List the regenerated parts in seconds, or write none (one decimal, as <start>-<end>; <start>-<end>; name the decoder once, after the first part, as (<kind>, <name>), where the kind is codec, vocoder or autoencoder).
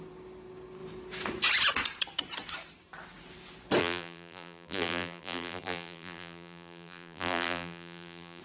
3.8-8.4 (vocoder, BigVGAN v2)